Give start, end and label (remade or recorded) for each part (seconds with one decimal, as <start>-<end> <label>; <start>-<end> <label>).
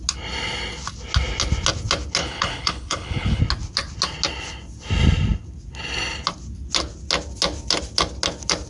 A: 0.0-2.2 recorded; 2.2-3.4 remade; 3.4-8.7 recorded